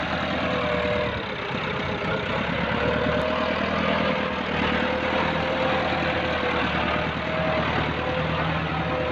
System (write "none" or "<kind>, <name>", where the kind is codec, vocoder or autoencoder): none